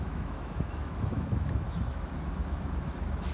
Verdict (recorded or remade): remade